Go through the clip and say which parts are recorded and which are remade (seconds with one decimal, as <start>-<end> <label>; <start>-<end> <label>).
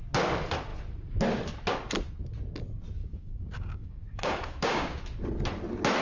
0.0-3.0 recorded; 3.0-5.0 remade; 5.0-6.0 recorded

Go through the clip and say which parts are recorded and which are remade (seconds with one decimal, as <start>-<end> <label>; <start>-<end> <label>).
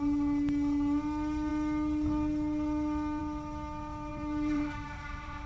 0.0-4.1 recorded; 4.1-5.5 remade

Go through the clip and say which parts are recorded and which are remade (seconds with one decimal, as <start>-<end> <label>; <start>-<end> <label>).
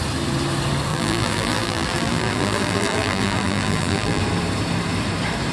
0.0-0.9 recorded; 0.9-4.2 remade; 4.2-5.5 recorded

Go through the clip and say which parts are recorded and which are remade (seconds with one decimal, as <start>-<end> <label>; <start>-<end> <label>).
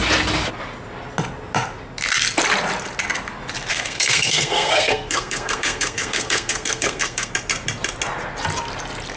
0.0-3.7 recorded; 3.7-7.3 remade; 7.3-9.2 recorded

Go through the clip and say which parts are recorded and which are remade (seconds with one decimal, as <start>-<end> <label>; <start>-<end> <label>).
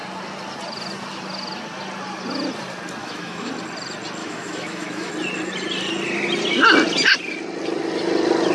0.0-3.0 recorded; 3.0-3.5 remade; 3.5-4.2 recorded; 4.2-5.1 remade; 5.1-8.5 recorded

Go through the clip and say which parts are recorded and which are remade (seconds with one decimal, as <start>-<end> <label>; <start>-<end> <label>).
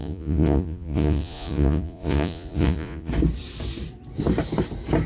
0.0-3.1 remade; 3.1-5.1 recorded